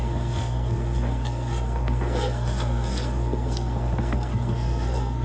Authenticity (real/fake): fake